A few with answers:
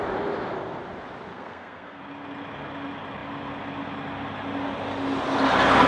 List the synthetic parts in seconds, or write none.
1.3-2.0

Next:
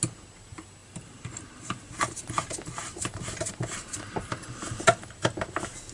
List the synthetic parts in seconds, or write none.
0.8-4.3

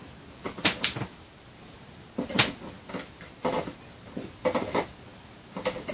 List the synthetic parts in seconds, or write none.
none